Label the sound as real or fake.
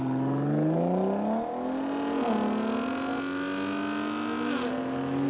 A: real